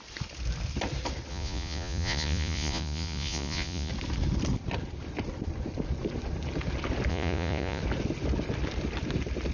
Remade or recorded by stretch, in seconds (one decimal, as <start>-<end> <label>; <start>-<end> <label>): 0.0-1.3 recorded; 1.3-3.9 remade; 3.9-7.1 recorded; 7.1-7.8 remade; 7.8-9.5 recorded